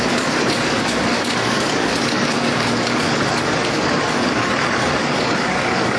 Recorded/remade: remade